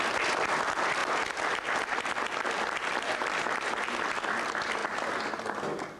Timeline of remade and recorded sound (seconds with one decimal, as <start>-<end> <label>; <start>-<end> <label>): 0.0-6.0 recorded

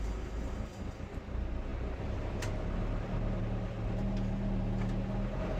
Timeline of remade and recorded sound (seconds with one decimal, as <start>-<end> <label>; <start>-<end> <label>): 0.0-5.6 recorded